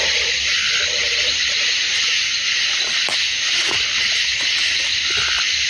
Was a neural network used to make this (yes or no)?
no